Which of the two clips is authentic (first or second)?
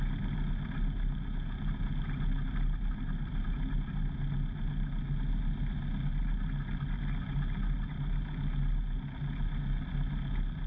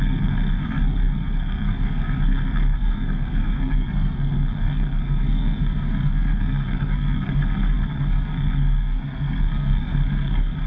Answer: first